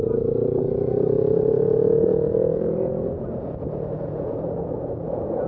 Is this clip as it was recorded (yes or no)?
no